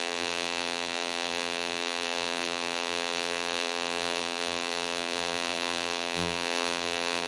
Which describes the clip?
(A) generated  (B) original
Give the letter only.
A